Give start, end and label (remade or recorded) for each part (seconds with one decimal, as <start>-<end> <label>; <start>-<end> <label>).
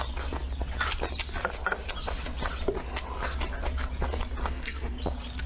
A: 0.0-4.4 recorded; 4.4-5.0 remade; 5.0-5.5 recorded